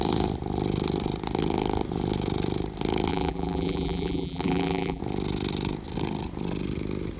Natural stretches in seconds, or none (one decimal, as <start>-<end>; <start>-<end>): 0.0-3.1; 5.0-7.2